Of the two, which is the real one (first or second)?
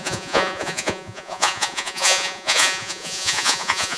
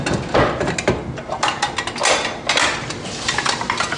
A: second